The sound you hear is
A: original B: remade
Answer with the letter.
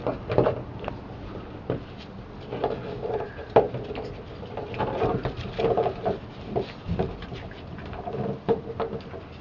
A